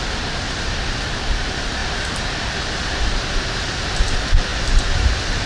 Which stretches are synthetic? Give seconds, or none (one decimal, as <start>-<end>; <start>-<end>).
none